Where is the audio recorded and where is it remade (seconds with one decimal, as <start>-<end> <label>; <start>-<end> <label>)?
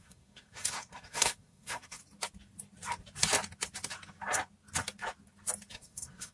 0.0-2.0 remade; 2.0-5.7 recorded; 5.7-6.3 remade